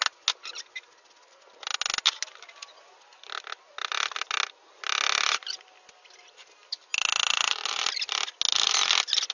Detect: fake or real real